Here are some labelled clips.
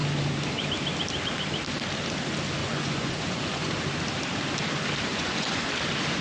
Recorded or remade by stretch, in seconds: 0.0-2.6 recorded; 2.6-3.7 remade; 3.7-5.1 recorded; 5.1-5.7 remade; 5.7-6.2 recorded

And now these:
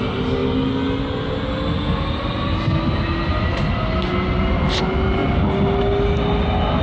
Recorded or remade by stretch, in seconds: 0.0-6.8 recorded

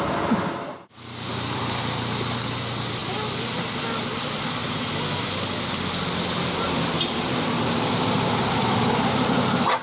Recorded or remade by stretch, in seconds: 0.0-9.8 recorded

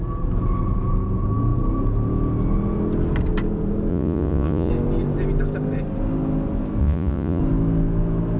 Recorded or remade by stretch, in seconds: 0.0-3.9 recorded; 3.9-4.7 remade; 4.7-6.8 recorded; 6.8-7.4 remade; 7.4-8.4 recorded

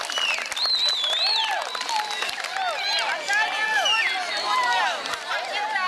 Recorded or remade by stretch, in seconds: 0.0-5.9 recorded

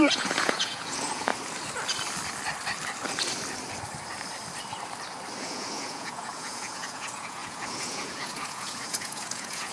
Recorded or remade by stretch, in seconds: 0.0-1.3 remade; 1.3-5.4 recorded; 5.4-9.7 remade

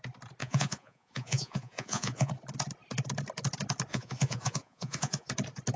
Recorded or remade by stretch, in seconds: 0.0-0.4 recorded; 0.4-2.3 remade; 2.3-3.9 recorded; 3.9-5.3 remade; 5.3-5.8 recorded

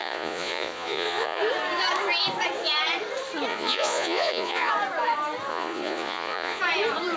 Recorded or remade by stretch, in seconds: 0.0-1.4 remade; 1.4-3.5 recorded; 3.5-4.7 remade; 4.7-5.5 recorded; 5.5-6.6 remade; 6.6-7.2 recorded